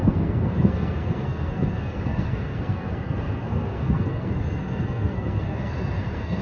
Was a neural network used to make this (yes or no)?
yes